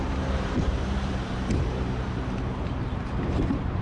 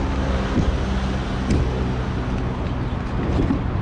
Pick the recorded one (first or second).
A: second